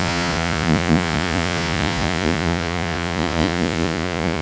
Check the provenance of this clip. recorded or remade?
remade